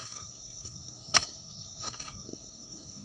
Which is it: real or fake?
fake